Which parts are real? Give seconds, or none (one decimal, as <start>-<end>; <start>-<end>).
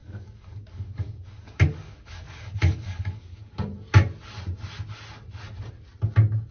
3.5-6.5